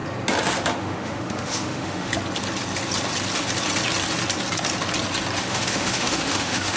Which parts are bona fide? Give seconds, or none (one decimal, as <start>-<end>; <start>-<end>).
0.0-0.8; 2.1-5.4